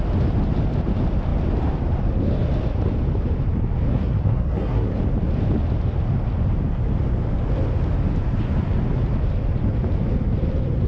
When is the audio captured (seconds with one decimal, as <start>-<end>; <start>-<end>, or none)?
0.0-3.9; 5.0-10.9